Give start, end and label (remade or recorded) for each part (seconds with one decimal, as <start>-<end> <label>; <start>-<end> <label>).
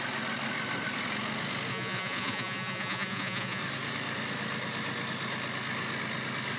0.0-1.7 recorded; 1.7-3.6 remade; 3.6-6.6 recorded